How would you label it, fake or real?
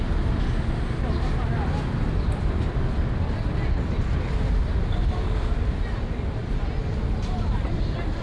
real